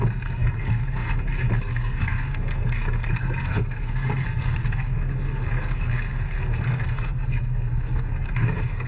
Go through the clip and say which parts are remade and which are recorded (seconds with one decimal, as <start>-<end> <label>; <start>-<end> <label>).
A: 0.0-8.9 remade